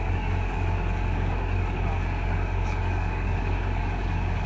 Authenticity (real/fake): fake